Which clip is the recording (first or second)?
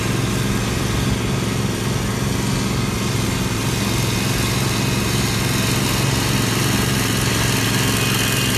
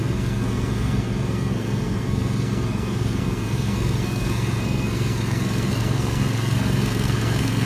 first